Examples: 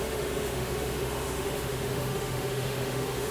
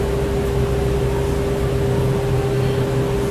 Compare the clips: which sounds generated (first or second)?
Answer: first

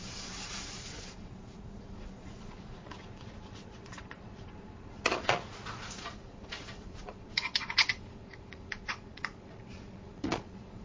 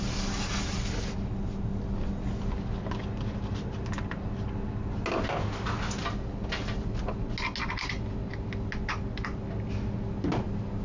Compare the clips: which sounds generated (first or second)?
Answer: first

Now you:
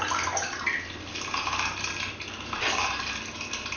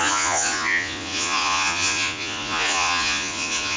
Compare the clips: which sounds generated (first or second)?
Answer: second